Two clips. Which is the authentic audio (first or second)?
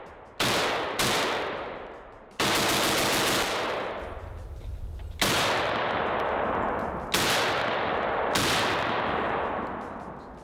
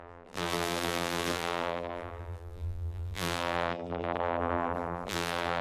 first